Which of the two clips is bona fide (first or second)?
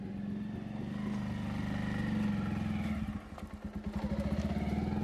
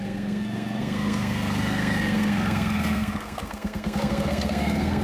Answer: first